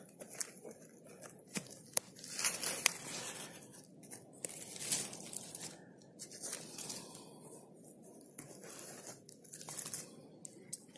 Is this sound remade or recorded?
recorded